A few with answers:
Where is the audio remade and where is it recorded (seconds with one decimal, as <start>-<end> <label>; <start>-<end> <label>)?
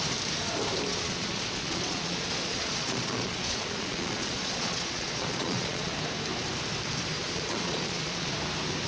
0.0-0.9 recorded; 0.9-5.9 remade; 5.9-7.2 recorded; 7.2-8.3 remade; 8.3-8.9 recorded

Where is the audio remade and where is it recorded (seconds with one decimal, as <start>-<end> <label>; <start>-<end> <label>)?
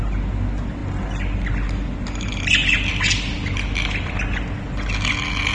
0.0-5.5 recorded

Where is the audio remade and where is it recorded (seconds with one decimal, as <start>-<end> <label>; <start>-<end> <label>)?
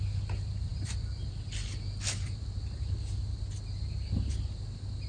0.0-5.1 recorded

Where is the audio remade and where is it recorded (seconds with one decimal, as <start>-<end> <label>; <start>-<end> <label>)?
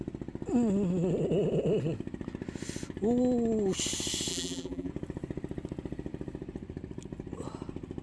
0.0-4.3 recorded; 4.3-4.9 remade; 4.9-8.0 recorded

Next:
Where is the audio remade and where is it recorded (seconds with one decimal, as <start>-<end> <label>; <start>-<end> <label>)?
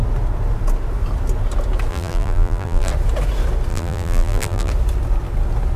0.0-1.9 recorded; 1.9-2.9 remade; 2.9-3.7 recorded; 3.7-4.7 remade; 4.7-5.8 recorded